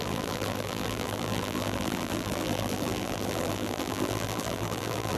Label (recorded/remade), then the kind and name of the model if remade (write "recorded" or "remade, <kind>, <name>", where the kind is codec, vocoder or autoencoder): remade, vocoder, BigVGAN v2